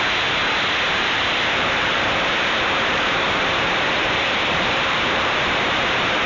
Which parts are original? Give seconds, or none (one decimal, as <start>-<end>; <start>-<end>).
0.4-0.9